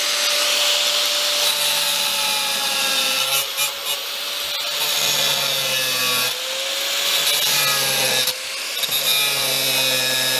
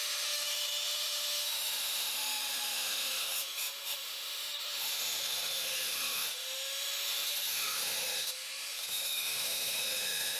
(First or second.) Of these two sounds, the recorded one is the first